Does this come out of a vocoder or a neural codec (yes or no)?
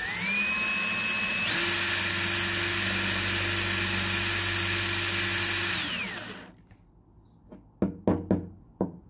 no